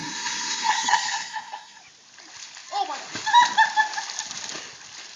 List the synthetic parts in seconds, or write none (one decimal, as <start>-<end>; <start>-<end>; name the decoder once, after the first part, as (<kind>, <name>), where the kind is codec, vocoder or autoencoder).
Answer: 0.0-1.8 (codec, SNAC)